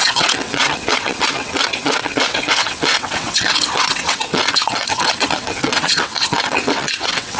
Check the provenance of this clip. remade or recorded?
remade